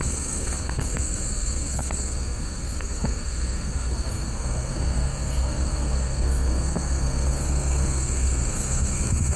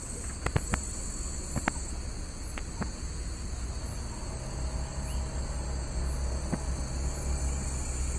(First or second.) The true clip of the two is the second